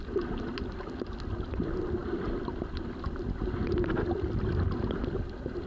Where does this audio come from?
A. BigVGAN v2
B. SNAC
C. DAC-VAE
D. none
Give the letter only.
D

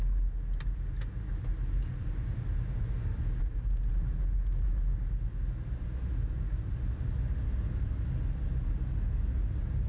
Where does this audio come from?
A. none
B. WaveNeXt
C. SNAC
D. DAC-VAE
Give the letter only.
A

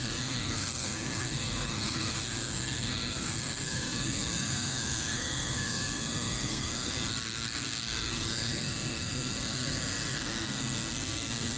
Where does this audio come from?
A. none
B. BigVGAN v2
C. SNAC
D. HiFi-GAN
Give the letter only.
C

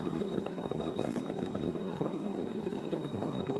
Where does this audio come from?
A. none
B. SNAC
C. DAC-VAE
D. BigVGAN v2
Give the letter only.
B